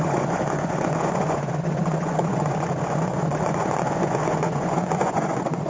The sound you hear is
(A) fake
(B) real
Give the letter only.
A